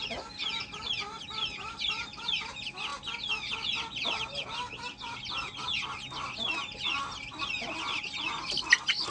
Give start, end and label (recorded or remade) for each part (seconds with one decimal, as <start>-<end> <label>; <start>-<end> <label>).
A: 0.0-9.1 recorded